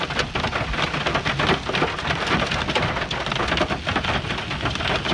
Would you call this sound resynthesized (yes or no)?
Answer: no